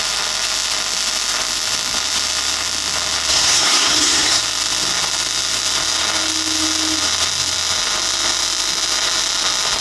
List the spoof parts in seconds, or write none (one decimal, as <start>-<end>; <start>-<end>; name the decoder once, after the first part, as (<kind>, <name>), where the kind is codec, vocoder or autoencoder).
3.3-4.4 (codec, SNAC)